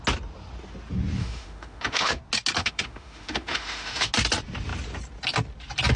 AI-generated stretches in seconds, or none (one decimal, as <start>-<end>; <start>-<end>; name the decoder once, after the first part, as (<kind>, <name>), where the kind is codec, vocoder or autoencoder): 1.2-2.2 (autoencoder, DAC-VAE); 2.6-4.1